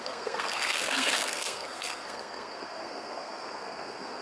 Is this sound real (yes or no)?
no